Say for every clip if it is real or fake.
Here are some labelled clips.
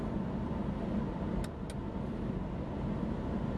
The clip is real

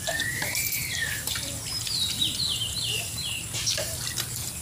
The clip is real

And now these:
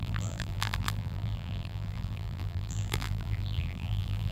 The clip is fake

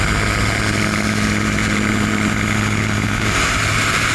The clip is real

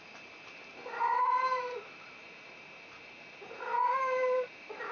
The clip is fake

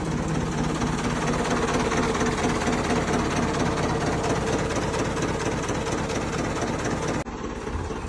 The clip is real